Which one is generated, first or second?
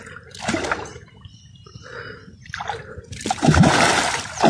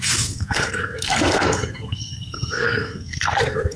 second